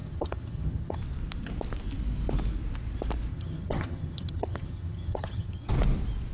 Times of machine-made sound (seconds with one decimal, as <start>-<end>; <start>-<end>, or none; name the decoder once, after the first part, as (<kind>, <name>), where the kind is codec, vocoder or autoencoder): 0.0-1.0 (vocoder, HiFi-GAN); 3.3-5.7